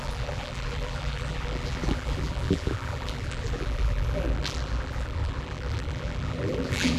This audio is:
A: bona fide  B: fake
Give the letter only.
B